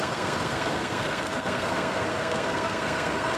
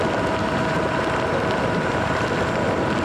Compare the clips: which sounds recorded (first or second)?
second